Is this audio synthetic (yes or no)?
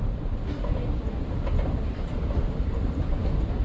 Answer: no